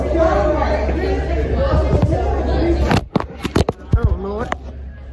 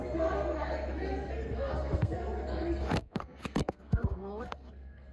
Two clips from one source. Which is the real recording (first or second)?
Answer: first